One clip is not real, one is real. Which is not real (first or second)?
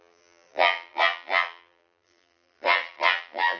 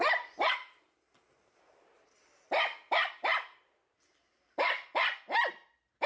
first